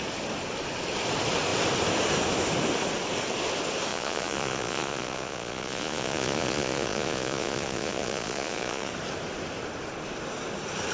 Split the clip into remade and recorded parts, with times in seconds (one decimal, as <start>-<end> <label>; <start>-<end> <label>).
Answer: 0.0-3.9 recorded; 3.9-8.9 remade; 8.9-10.9 recorded